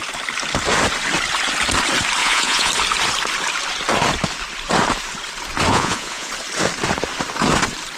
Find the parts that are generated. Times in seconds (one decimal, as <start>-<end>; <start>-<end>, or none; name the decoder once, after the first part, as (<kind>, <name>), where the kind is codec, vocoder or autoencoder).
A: 2.2-2.7 (vocoder, Vocos); 5.7-6.3